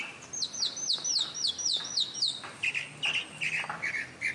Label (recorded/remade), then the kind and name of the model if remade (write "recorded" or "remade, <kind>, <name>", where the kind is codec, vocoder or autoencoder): recorded